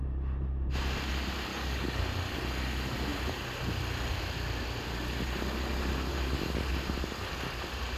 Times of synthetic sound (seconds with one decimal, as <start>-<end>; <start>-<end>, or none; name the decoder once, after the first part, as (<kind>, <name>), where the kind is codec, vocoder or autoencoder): 1.5-2.0 (codec, DAC); 6.1-6.7